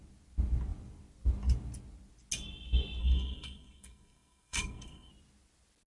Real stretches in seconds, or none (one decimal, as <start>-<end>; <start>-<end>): 0.0-3.0; 5.1-5.9